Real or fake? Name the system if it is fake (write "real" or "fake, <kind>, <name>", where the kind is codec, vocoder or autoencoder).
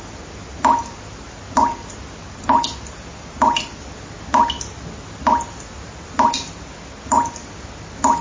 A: real